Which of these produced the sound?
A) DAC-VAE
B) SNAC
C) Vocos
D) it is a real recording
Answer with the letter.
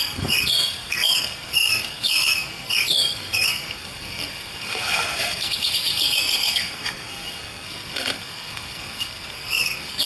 B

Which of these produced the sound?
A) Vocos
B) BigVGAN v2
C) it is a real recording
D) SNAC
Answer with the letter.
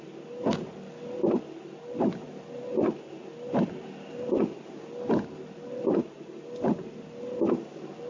C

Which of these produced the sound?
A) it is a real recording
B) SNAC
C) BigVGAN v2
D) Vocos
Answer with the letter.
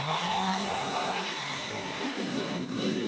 B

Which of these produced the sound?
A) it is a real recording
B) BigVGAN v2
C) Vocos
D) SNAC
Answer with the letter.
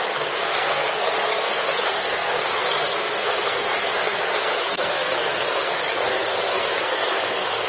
D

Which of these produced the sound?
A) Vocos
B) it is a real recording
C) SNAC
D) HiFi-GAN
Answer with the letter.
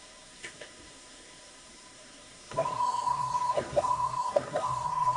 C